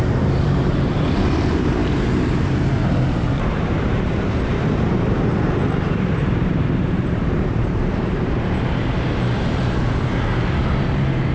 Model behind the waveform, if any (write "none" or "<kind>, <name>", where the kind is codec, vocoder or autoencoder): vocoder, BigVGAN v2